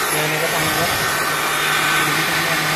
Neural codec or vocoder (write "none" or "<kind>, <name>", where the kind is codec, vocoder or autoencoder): none